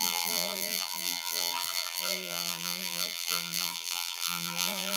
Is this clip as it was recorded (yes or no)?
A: no